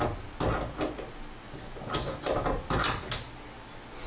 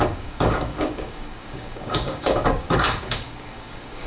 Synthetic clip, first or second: second